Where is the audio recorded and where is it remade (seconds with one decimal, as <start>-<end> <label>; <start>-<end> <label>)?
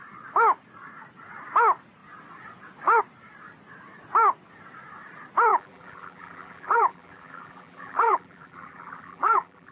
0.0-5.5 recorded; 5.5-9.7 remade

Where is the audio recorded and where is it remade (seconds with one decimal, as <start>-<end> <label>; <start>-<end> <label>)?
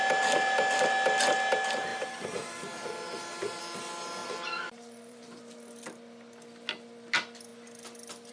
0.0-1.9 recorded; 1.9-3.6 remade; 3.6-4.2 recorded; 4.2-5.4 remade; 5.4-8.3 recorded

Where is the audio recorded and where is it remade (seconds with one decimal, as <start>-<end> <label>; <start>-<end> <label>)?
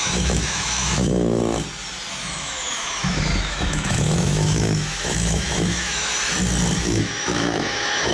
0.0-1.4 remade; 1.4-2.1 recorded; 2.1-6.1 remade; 6.1-6.8 recorded; 6.8-8.1 remade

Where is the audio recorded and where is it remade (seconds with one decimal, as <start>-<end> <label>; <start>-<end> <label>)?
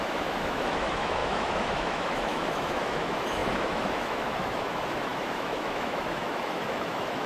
0.0-7.3 remade